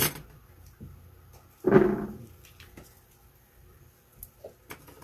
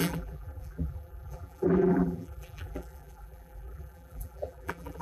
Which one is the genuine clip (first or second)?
first